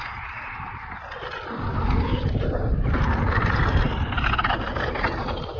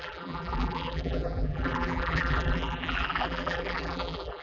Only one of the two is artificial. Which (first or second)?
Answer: second